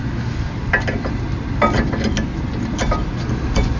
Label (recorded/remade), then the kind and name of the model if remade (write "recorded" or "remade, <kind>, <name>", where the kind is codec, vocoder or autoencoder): recorded